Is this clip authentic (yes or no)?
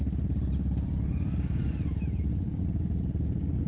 yes